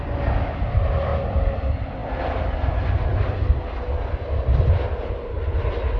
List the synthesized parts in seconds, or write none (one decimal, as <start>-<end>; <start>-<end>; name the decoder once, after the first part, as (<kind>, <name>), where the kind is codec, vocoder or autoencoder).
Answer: none